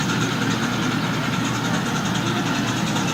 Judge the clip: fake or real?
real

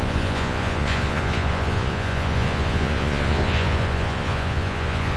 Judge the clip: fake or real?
fake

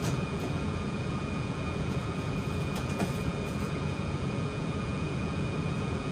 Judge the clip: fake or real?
fake